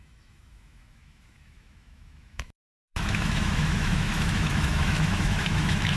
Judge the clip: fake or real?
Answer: fake